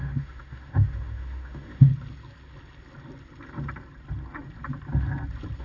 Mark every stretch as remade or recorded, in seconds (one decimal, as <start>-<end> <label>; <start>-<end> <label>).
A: 0.0-1.9 remade; 1.9-5.6 recorded